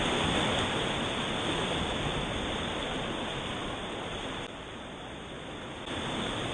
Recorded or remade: recorded